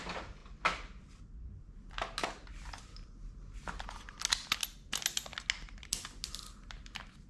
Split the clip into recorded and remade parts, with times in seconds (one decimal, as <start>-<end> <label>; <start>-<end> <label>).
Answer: 0.0-7.3 recorded